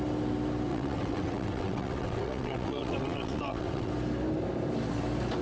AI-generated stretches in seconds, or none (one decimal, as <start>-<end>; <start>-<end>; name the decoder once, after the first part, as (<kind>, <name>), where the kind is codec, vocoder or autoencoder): 0.7-3.9 (vocoder, WaveNeXt)